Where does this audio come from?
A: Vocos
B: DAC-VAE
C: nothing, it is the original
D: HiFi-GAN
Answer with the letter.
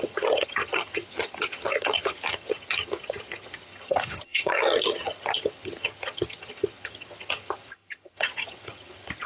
D